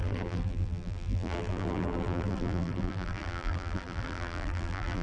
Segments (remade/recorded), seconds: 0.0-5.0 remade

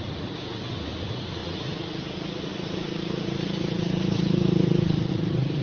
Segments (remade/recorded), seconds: 0.0-2.5 recorded; 2.5-5.1 remade; 5.1-5.6 recorded

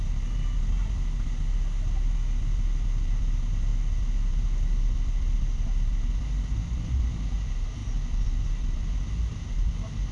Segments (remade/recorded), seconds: 0.0-10.1 recorded

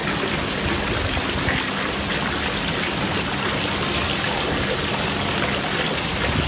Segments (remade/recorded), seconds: 0.0-6.5 recorded

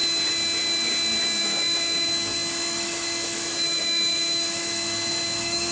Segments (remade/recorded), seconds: 0.0-1.4 recorded; 1.4-5.7 remade

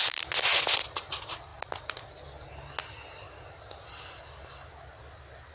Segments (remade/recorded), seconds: 0.0-5.5 recorded

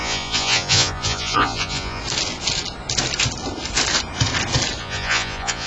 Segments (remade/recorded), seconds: 0.0-2.0 remade; 2.0-4.8 recorded; 4.8-5.7 remade

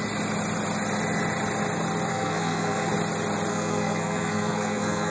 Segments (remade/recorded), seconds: 0.0-2.1 recorded; 2.1-2.9 remade; 2.9-3.5 recorded; 3.5-5.1 remade